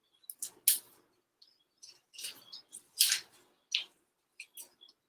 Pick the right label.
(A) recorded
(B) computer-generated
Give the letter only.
A